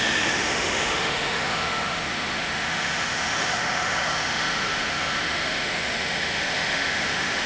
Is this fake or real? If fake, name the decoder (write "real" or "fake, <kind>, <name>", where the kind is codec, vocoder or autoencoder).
fake, autoencoder, DAC-VAE